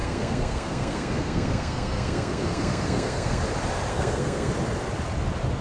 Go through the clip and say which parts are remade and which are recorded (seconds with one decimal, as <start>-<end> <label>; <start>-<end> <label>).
0.0-3.4 remade; 3.4-3.9 recorded; 3.9-4.5 remade; 4.5-5.6 recorded